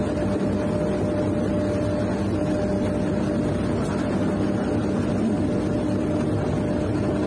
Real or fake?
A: real